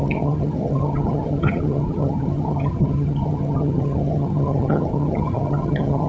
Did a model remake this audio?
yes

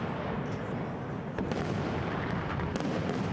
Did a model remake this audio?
no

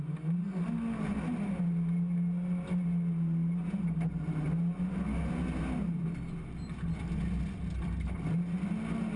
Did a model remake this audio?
no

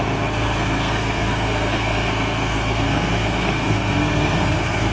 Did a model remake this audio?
yes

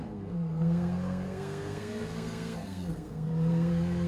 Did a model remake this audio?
yes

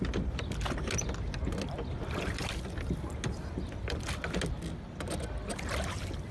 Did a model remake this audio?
no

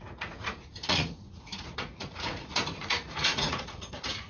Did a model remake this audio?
yes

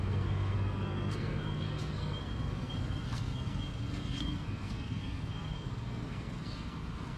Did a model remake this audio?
yes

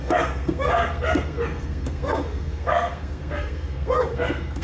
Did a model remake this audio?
yes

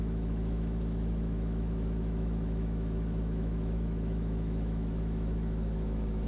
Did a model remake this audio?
yes